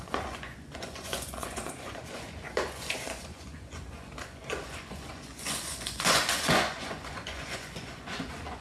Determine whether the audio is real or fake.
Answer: fake